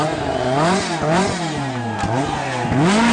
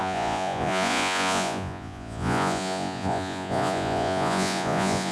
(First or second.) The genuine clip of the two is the first